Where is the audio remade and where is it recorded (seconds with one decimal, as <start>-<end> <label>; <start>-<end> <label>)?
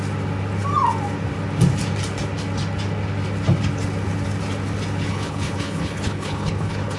0.0-5.1 recorded; 5.1-7.0 remade